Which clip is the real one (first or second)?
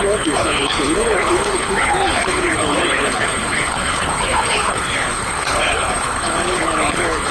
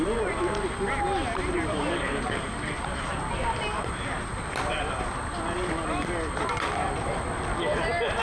second